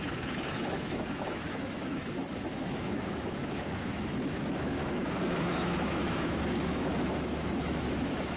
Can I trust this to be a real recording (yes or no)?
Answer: no